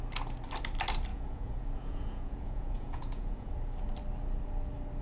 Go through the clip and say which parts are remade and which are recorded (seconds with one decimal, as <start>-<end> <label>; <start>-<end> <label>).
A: 0.0-1.1 recorded; 1.1-3.5 remade; 3.5-5.0 recorded